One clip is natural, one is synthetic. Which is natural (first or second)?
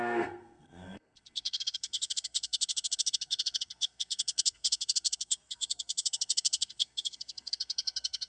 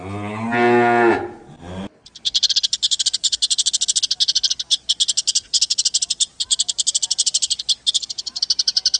second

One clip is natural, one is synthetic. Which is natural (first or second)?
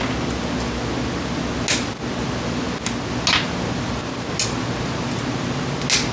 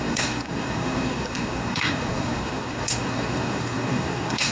first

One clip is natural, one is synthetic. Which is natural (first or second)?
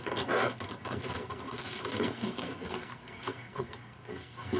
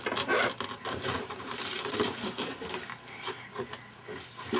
second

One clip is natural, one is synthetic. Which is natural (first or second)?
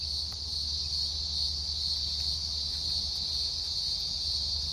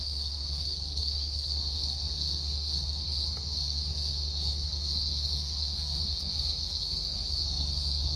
first